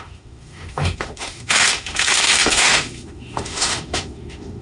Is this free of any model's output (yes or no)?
no